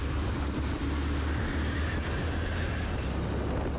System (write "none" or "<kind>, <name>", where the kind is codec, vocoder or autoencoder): none